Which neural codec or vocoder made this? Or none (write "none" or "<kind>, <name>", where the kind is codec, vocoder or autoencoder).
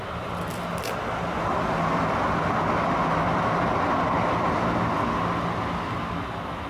none